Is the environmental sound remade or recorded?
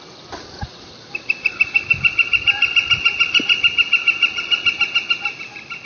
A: recorded